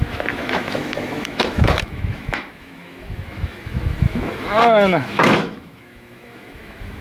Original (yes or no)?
no